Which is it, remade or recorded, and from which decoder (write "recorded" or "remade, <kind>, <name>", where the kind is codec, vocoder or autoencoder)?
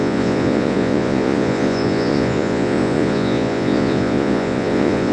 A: remade, vocoder, Vocos